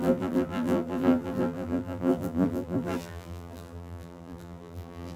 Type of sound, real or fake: fake